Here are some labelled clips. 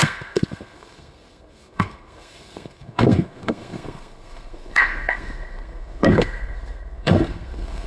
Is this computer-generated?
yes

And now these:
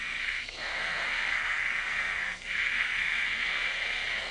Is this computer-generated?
yes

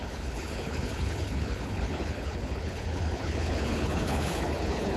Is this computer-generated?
yes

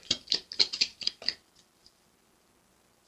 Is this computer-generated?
no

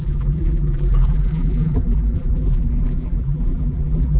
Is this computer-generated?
yes